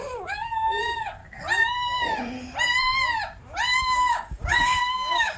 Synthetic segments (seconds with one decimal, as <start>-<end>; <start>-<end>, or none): 0.0-1.2; 3.8-5.4